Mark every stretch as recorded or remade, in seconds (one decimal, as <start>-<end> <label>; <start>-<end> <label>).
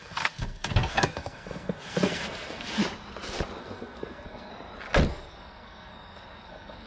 0.0-2.8 remade; 2.8-3.6 recorded; 3.6-4.5 remade; 4.5-5.1 recorded; 5.1-6.9 remade